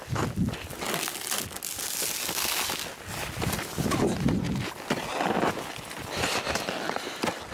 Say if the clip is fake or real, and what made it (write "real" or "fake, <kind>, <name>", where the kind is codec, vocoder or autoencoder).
real